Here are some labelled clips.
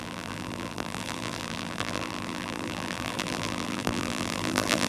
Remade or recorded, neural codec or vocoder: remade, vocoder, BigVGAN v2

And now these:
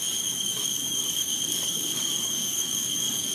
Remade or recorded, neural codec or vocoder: remade, codec, DAC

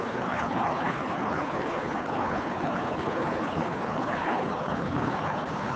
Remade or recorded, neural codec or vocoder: remade, codec, HILCodec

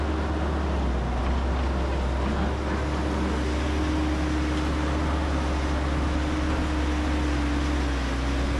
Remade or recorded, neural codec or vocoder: recorded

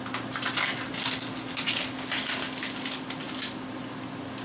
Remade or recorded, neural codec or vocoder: recorded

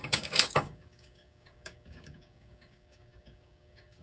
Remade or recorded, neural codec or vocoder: remade, codec, DAC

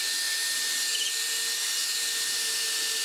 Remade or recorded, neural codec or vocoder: recorded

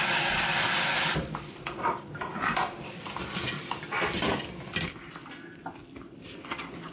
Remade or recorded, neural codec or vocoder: recorded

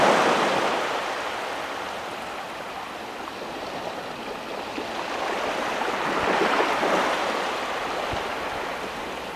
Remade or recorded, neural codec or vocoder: recorded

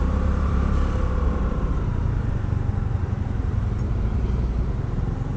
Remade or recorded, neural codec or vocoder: remade, vocoder, BigVGAN v2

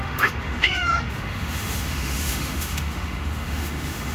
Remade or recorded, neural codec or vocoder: remade, autoencoder, DAC-VAE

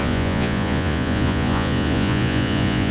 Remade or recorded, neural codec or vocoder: remade, vocoder, Vocos